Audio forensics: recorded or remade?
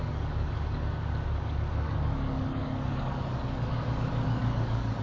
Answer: remade